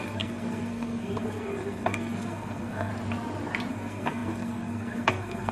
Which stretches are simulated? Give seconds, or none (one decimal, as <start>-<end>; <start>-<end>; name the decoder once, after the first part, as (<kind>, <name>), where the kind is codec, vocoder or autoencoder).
0.0-2.9 (codec, SNAC); 3.7-5.5